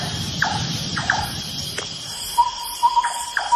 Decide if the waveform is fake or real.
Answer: fake